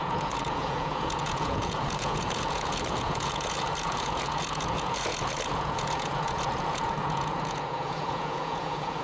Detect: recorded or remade remade